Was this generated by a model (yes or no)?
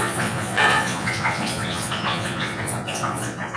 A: yes